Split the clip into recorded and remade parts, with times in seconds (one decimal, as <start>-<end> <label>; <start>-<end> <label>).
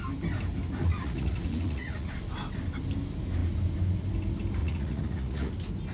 0.0-0.8 recorded; 0.8-2.1 remade; 2.1-4.6 recorded; 4.6-5.5 remade; 5.5-5.9 recorded